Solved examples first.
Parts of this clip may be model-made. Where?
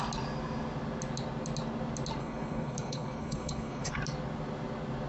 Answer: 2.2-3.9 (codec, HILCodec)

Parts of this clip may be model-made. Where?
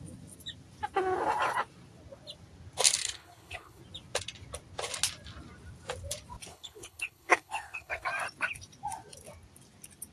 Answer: 3.0-3.8 (codec, HILCodec); 6.5-8.1